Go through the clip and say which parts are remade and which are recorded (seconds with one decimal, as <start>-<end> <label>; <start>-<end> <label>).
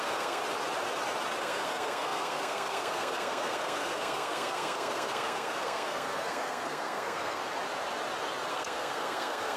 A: 0.0-0.4 remade; 0.4-1.4 recorded; 1.4-7.4 remade; 7.4-8.5 recorded; 8.5-9.6 remade